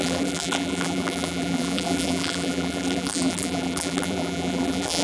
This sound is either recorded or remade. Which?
remade